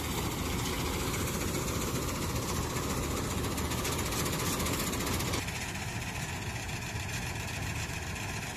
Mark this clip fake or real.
real